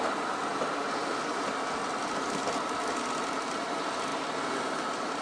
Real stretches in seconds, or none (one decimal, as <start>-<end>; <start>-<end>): 0.0-5.2